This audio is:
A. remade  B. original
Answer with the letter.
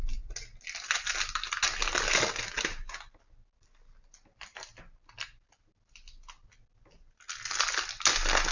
B